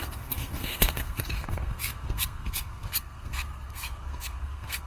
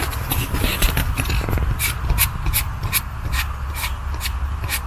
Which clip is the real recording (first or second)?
second